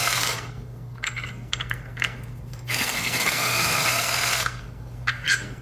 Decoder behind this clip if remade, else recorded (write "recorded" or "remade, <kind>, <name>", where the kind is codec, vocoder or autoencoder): remade, codec, SNAC